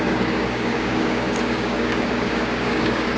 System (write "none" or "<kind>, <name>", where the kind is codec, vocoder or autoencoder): codec, DAC